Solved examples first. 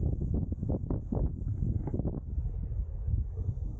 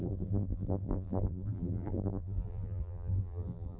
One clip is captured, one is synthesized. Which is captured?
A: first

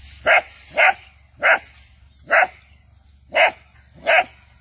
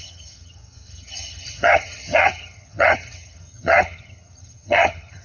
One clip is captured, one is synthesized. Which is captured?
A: first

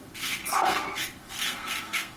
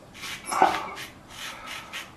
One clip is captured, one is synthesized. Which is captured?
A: second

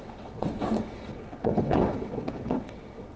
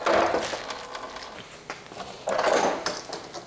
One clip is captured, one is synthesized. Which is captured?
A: second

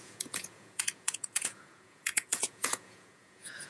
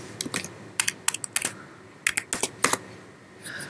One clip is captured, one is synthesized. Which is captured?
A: second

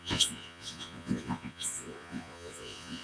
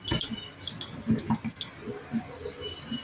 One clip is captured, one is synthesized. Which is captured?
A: second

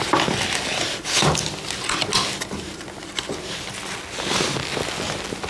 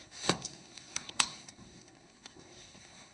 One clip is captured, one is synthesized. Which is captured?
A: first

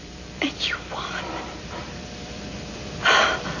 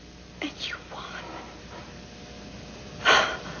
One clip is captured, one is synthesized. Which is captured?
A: second